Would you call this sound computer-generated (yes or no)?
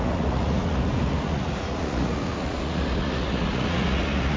yes